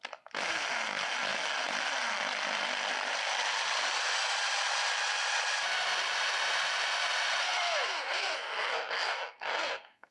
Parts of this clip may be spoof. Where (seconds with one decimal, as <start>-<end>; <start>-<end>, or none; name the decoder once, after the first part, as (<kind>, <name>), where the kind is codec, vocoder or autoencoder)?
7.4-10.1 (codec, SNAC)